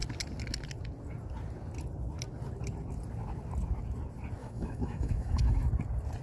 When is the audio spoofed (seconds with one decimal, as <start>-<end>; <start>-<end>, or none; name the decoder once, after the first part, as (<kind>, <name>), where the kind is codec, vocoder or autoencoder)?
4.4-5.7 (autoencoder, DAC-VAE)